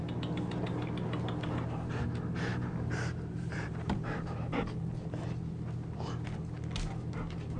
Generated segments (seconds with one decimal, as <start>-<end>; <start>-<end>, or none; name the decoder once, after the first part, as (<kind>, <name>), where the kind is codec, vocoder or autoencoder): 2.5-4.8 (vocoder, BigVGAN v2)